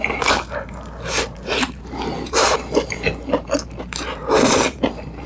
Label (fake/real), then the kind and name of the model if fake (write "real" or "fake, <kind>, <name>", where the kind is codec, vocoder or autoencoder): fake, vocoder, BigVGAN v2